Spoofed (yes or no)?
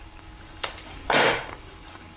yes